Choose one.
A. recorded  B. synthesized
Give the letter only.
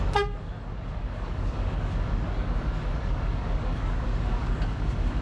B